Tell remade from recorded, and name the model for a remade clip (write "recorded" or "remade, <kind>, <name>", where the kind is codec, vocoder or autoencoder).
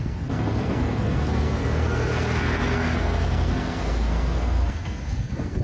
remade, codec, SNAC